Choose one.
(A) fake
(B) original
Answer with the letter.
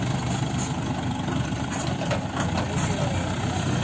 B